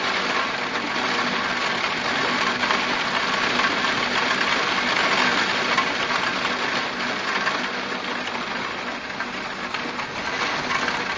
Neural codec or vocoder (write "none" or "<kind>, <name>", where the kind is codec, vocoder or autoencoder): none